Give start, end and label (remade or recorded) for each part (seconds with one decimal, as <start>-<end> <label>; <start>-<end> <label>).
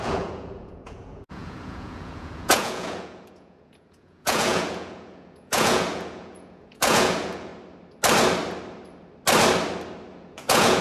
0.0-7.5 remade; 7.5-10.1 recorded; 10.1-10.8 remade